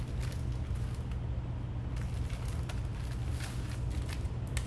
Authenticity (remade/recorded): recorded